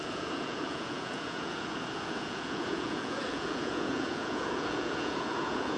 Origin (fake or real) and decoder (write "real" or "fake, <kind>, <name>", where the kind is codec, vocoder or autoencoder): fake, vocoder, Vocos